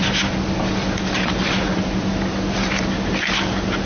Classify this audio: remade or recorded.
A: recorded